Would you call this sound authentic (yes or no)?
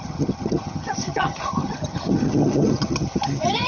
no